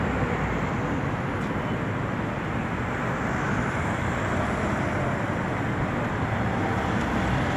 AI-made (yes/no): no